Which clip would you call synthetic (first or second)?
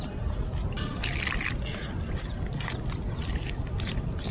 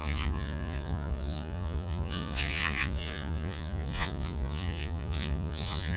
second